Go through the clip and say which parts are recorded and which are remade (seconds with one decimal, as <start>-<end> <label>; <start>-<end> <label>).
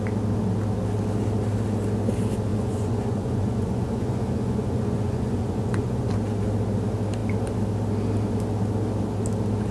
0.0-2.5 recorded; 2.5-6.1 remade; 6.1-9.7 recorded